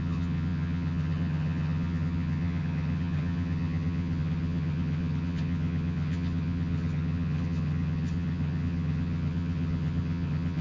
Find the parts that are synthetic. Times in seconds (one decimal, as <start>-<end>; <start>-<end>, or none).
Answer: 0.0-10.6